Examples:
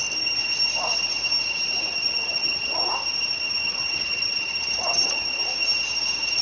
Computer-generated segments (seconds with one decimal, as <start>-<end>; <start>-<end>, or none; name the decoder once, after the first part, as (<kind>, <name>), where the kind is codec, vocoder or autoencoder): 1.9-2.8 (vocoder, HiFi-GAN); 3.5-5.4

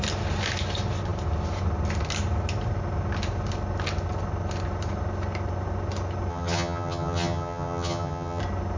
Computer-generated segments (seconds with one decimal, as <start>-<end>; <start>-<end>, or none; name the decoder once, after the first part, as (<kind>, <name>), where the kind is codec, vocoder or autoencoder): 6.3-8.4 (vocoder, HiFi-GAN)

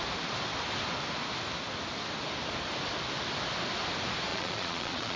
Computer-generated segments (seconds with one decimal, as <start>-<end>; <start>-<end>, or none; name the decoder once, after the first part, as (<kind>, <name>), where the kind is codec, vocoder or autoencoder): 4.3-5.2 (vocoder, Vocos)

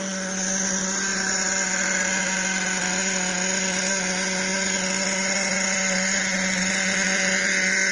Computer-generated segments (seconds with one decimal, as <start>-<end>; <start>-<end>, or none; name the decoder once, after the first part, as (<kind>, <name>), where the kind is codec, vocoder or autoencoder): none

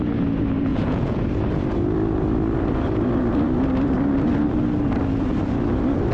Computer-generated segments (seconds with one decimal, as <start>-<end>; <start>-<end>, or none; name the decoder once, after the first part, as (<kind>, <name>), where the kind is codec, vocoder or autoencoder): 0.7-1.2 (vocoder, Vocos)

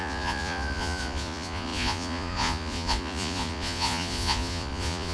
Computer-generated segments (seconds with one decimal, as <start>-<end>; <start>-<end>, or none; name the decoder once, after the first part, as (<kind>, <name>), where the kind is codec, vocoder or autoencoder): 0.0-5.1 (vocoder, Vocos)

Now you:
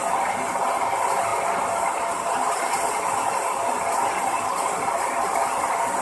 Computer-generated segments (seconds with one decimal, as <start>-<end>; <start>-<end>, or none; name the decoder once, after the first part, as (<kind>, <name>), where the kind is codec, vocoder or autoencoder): none

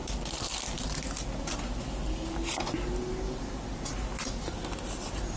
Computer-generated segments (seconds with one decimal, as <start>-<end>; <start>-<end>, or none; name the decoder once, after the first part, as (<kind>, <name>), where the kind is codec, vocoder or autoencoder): none